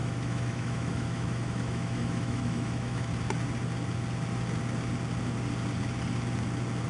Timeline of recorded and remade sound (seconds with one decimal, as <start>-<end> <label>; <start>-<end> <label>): 0.0-3.1 remade; 3.1-6.9 recorded